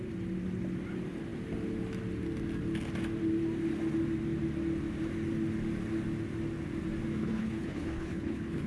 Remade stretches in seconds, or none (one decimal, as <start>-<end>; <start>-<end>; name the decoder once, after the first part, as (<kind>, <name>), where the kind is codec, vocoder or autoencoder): 7.2-8.7 (codec, HILCodec)